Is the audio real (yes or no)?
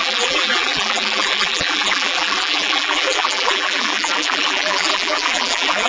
no